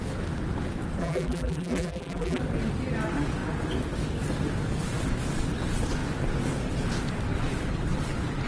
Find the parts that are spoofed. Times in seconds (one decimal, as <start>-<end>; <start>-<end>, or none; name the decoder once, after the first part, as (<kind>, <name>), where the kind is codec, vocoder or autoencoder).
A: 1.0-2.4 (vocoder, BigVGAN v2)